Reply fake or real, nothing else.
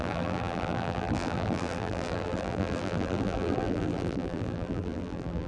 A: fake